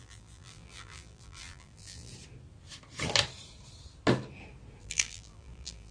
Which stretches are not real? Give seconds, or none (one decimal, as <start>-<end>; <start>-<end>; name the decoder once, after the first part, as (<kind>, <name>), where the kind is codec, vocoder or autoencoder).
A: 0.0-2.1 (vocoder, BigVGAN v2); 4.8-5.9